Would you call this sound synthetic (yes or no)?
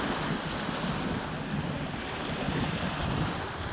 no